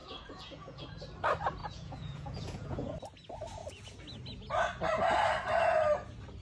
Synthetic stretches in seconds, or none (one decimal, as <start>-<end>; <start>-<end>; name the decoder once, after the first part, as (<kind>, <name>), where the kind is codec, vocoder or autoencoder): 0.0-0.8 (vocoder, Vocos); 1.6-3.0

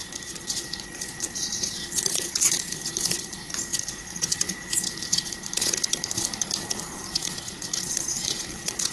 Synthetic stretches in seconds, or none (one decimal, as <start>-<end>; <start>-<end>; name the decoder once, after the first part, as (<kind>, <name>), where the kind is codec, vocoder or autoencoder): 0.0-8.9 (vocoder, Vocos)